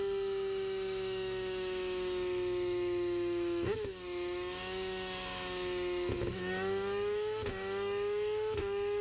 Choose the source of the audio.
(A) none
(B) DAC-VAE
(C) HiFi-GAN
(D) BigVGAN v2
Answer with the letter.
B